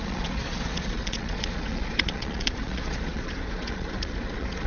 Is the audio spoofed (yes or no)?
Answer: yes